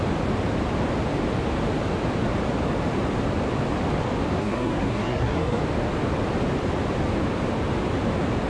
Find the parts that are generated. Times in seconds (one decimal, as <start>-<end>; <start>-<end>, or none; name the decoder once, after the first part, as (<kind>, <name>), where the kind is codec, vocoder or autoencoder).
4.4-5.6 (codec, SNAC)